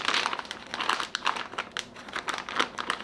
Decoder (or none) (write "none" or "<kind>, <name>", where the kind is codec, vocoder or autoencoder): none